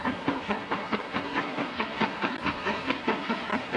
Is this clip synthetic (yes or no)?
yes